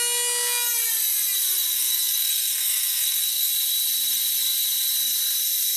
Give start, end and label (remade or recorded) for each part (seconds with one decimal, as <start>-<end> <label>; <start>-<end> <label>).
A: 0.0-1.5 recorded; 1.5-3.5 remade; 3.5-5.8 recorded